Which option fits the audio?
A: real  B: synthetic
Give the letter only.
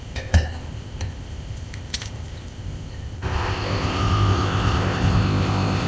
B